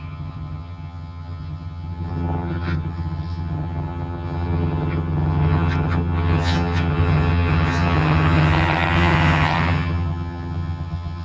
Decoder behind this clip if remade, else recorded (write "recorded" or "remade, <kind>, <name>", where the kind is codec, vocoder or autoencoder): remade, vocoder, HiFi-GAN